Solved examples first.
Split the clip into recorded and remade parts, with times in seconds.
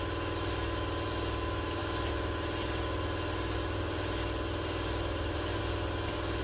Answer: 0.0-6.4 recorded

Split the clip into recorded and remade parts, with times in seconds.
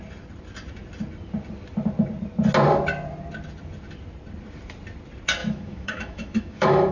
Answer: 0.0-5.4 recorded; 5.4-6.9 remade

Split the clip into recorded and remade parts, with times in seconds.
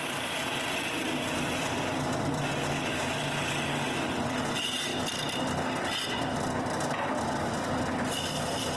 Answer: 0.0-2.5 remade; 2.5-4.1 recorded; 4.1-4.9 remade; 4.9-5.7 recorded; 5.7-8.8 remade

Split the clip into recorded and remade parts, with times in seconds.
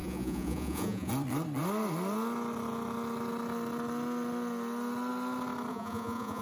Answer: 0.0-1.1 remade; 1.1-5.7 recorded; 5.7-6.4 remade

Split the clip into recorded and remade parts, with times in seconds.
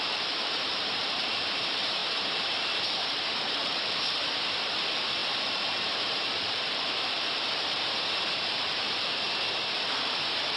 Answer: 0.0-10.6 remade